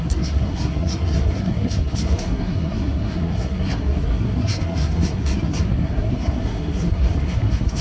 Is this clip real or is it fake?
fake